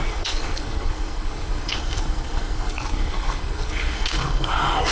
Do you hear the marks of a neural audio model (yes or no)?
yes